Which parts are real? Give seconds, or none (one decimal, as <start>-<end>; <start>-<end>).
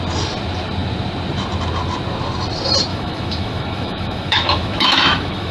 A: 0.0-2.9